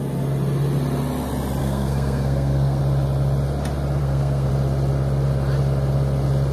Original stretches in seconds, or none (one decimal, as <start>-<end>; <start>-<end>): 0.0-1.6; 2.8-4.0; 4.5-6.5